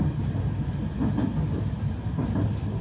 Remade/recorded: recorded